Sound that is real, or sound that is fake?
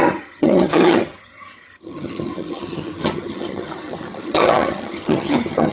fake